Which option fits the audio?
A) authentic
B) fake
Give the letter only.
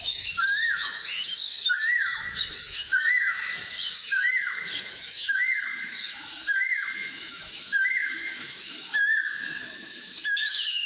B